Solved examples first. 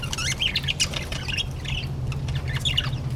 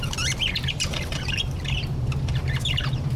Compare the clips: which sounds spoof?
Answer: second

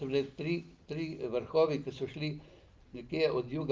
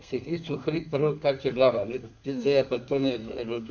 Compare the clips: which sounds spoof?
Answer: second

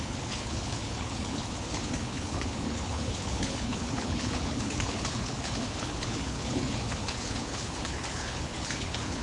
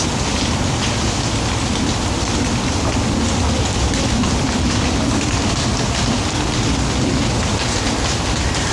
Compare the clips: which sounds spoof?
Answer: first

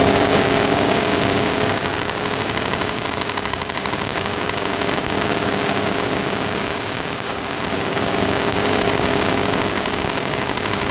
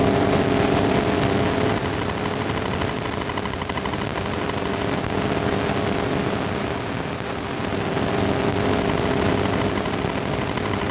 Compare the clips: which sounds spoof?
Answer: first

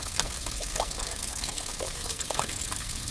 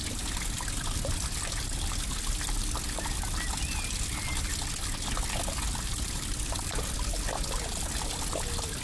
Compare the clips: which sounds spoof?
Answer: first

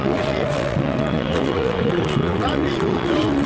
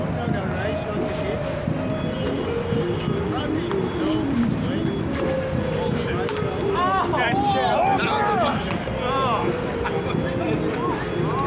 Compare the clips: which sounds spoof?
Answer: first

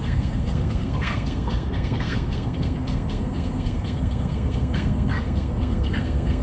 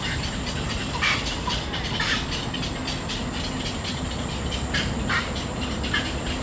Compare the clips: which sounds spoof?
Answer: first